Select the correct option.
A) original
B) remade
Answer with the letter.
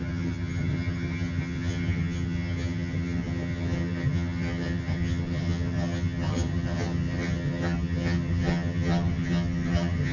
B